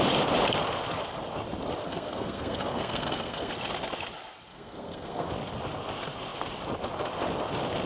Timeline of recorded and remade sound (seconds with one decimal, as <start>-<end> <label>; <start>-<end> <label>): 0.0-1.8 recorded; 1.8-3.5 remade; 3.5-4.5 recorded; 4.5-5.3 remade; 5.3-7.9 recorded